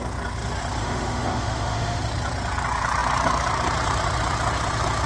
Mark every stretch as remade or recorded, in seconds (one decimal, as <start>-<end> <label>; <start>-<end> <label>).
0.0-0.8 recorded; 0.8-2.0 remade; 2.0-5.1 recorded